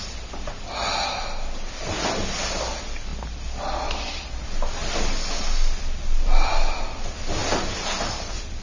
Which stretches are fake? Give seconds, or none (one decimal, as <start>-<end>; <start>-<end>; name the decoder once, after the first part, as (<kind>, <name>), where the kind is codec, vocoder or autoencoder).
none